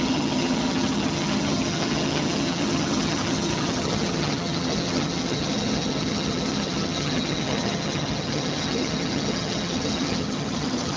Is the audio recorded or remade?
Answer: remade